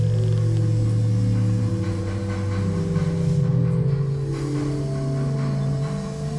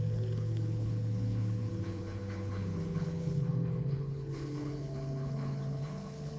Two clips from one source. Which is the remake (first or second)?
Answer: second